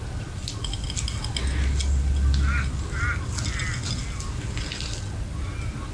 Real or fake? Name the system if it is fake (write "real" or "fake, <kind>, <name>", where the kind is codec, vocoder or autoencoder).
real